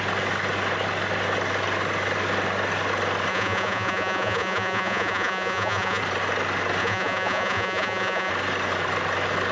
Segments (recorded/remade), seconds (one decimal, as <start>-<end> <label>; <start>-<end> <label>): 0.0-3.3 recorded; 3.3-6.0 remade; 6.0-6.8 recorded; 6.8-8.3 remade; 8.3-9.5 recorded